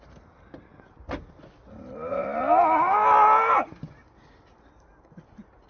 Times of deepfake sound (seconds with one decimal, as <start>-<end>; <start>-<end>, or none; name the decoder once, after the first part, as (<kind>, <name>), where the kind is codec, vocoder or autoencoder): 0.0-0.7 (vocoder, BigVGAN v2); 1.2-2.2